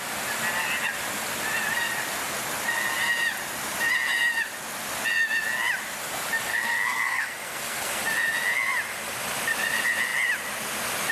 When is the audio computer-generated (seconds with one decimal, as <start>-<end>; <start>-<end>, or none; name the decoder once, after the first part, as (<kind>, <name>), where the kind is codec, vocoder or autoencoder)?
6.5-8.0 (codec, SNAC)

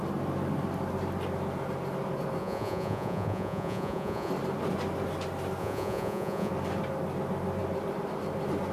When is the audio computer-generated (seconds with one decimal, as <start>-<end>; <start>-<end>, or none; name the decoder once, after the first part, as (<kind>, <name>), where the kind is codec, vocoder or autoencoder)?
2.4-4.3 (vocoder, Vocos); 5.6-6.5

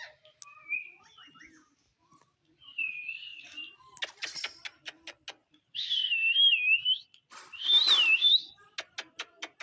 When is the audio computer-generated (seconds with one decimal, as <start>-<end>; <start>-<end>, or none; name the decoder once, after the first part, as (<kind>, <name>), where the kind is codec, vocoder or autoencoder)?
5.4-6.0 (vocoder, BigVGAN v2)

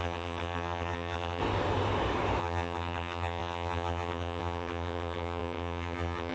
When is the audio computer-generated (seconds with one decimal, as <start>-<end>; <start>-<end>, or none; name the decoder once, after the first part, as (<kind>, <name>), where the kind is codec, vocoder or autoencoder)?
0.0-1.4 (vocoder, HiFi-GAN); 2.4-6.3